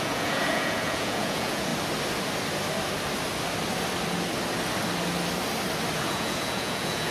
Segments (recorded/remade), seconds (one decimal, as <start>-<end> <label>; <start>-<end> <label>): 0.0-1.7 remade; 1.7-6.0 recorded; 6.0-7.1 remade